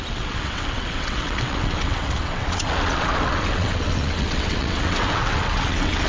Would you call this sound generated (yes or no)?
yes